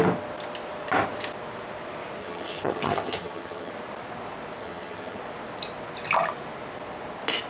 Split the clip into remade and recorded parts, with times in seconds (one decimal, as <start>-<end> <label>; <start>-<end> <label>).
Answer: 0.0-2.2 recorded; 2.2-3.7 remade; 3.7-4.6 recorded; 4.6-5.2 remade; 5.2-7.5 recorded